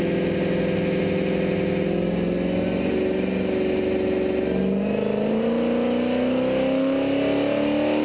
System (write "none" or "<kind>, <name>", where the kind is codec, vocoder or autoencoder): none